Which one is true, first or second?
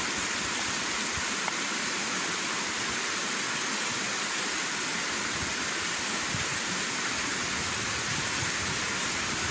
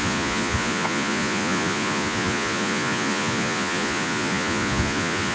first